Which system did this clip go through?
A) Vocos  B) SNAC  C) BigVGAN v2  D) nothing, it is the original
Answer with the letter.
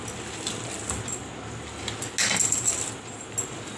D